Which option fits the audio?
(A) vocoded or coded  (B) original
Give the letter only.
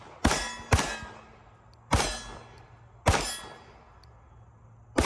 B